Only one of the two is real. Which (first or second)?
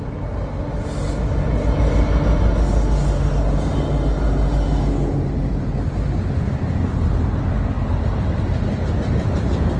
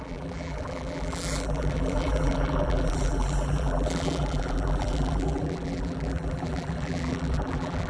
first